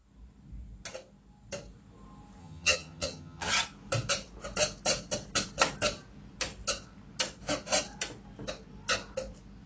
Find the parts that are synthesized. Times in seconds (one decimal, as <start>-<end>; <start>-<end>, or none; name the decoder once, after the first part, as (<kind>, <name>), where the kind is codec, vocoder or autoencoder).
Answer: 2.4-3.5 (vocoder, HiFi-GAN)